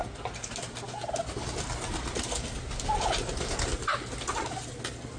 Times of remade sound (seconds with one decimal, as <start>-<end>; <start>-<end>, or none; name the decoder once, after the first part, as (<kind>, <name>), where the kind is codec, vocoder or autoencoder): none